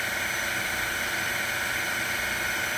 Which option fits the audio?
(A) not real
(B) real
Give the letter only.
B